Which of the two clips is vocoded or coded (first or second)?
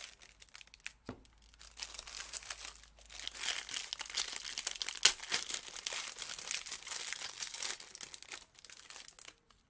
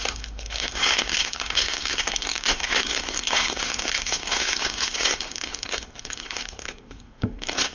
second